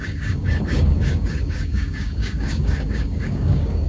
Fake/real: fake